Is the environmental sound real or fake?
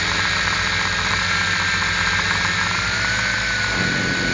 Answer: real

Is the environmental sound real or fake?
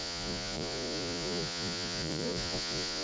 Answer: fake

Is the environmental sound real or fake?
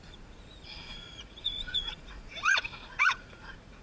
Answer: fake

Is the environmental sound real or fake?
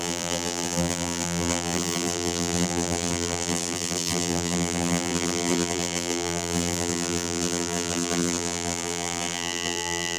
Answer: fake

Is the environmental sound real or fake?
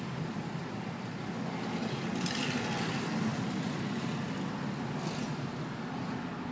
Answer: real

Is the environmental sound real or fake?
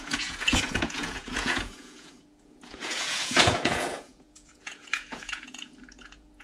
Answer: fake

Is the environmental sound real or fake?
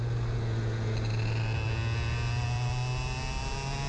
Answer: real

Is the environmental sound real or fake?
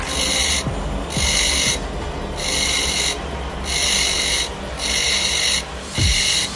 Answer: real